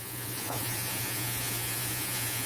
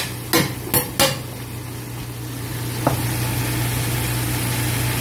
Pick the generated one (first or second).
first